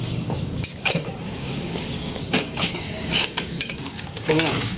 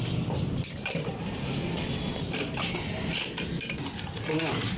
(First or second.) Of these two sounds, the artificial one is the first